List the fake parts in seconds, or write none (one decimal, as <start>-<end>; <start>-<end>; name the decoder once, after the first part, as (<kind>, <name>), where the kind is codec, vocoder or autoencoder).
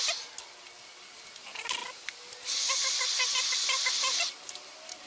none